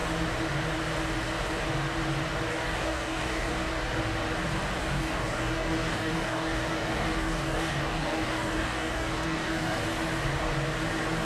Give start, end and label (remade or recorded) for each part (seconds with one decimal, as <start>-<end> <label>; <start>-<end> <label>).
0.0-2.5 recorded; 2.5-3.5 remade; 3.5-4.8 recorded; 4.8-9.8 remade; 9.8-11.2 recorded